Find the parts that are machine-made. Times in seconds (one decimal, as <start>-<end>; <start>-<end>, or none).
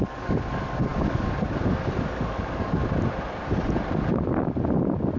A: 0.0-2.8